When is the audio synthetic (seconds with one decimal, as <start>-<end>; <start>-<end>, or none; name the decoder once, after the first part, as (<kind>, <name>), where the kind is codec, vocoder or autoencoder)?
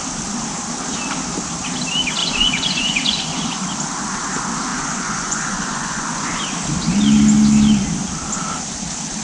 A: 2.2-3.6 (vocoder, Vocos); 4.7-6.4